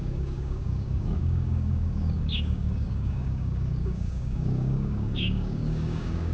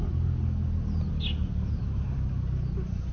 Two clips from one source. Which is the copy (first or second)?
first